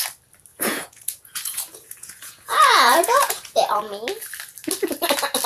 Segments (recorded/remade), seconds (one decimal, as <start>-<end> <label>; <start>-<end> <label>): 0.0-0.5 recorded; 0.5-3.8 remade; 3.8-5.5 recorded